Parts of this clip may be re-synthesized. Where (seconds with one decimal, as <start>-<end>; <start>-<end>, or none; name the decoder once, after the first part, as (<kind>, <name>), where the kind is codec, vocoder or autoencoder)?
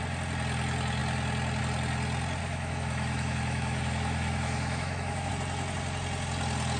2.4-5.3 (autoencoder, DAC-VAE)